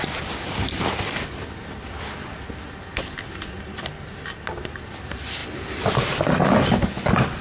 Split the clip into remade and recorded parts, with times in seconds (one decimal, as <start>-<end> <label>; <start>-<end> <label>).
0.0-7.4 recorded

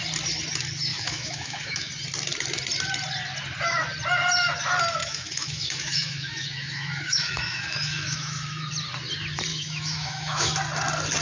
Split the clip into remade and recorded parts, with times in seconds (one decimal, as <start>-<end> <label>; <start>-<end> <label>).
0.0-0.9 recorded; 0.9-1.9 remade; 1.9-5.0 recorded; 5.0-8.7 remade; 8.7-9.5 recorded; 9.5-10.6 remade; 10.6-11.2 recorded